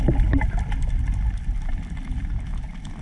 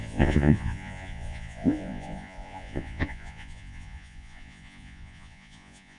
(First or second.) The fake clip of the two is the second